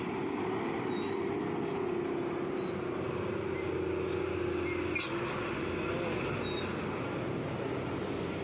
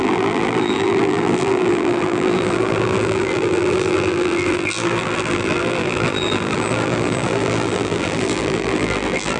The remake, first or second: second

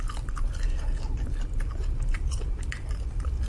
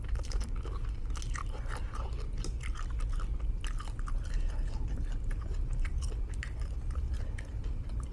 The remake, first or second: first